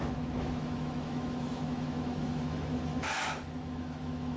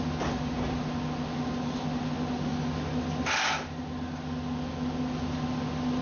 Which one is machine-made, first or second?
first